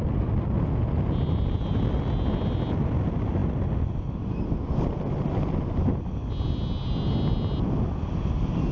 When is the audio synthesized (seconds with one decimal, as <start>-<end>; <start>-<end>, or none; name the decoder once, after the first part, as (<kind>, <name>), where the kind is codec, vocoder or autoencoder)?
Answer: none